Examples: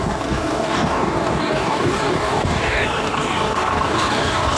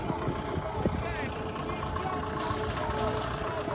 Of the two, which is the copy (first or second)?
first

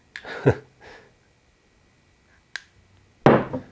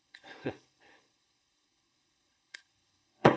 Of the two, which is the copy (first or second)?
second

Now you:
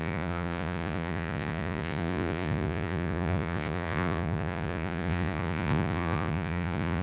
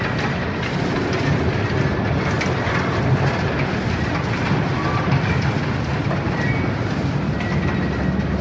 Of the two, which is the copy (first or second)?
first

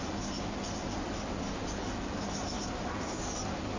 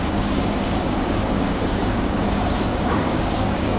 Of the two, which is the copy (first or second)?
second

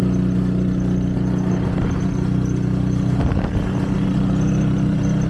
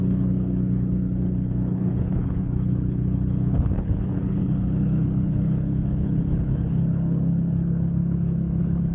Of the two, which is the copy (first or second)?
second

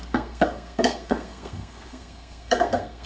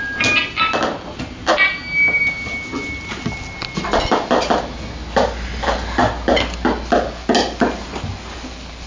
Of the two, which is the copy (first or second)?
first